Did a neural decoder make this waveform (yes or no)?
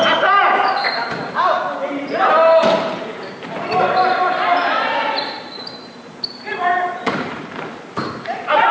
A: yes